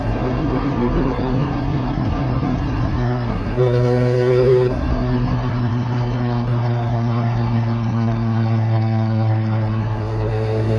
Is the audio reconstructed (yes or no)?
yes